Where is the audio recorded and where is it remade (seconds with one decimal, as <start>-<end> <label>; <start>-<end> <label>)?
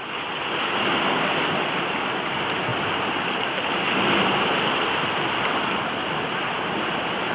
0.0-7.3 recorded